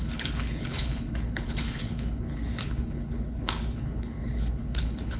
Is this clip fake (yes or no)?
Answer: yes